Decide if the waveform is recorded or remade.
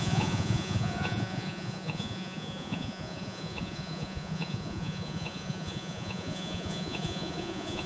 remade